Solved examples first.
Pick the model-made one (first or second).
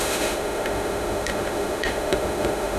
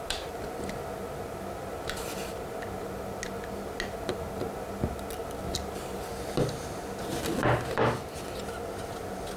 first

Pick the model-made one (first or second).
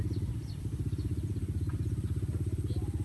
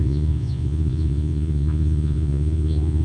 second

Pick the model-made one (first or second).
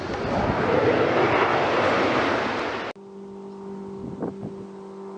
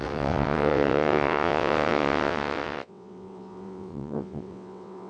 second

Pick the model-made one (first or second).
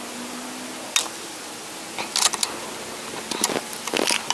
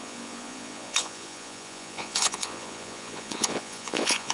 second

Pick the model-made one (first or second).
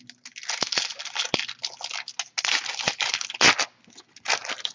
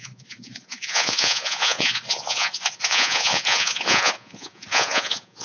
second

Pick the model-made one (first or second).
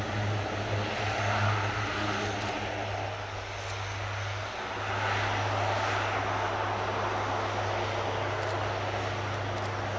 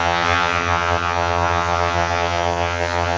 second